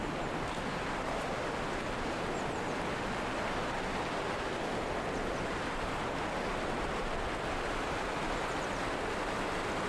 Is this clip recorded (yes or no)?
yes